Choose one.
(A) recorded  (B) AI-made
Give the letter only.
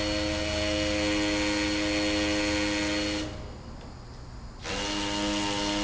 A